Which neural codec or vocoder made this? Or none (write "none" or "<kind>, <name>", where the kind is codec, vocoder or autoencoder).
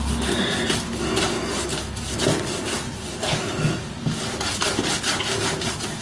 none